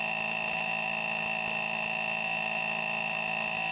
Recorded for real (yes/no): yes